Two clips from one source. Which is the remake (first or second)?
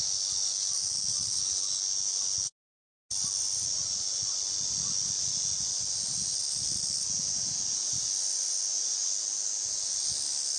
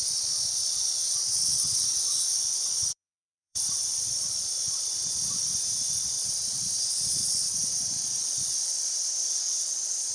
second